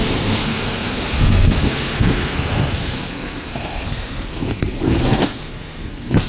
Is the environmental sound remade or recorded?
remade